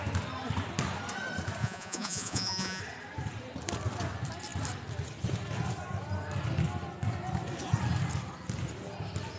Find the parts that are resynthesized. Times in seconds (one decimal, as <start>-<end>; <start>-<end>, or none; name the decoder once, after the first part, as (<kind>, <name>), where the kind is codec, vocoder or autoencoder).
1.6-2.8 (vocoder, Vocos)

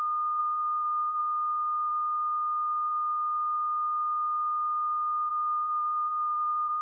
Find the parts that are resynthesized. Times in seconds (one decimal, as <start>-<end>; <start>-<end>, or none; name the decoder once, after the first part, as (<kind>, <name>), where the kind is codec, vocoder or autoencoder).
0.4-1.2 (vocoder, BigVGAN v2); 5.3-6.8